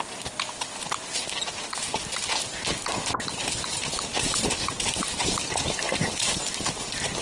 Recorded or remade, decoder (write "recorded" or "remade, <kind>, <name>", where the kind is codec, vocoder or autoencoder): recorded